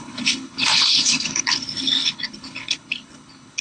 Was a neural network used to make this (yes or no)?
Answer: yes